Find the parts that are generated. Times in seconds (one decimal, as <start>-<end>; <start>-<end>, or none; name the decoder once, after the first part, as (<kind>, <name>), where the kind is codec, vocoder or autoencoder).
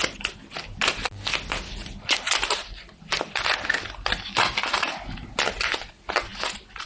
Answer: none